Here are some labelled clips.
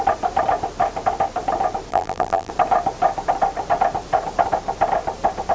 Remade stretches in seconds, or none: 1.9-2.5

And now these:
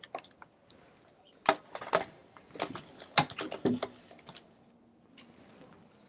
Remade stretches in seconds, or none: none

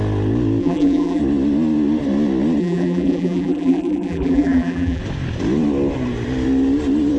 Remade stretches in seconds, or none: 0.6-1.2; 2.6-5.0

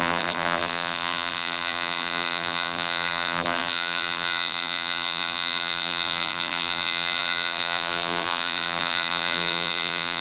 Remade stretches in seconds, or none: 0.0-10.2

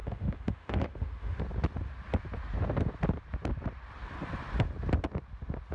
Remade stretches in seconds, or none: 0.0-1.4

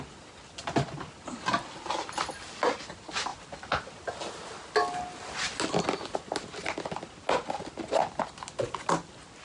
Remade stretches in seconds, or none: none